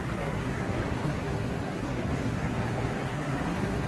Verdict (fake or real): fake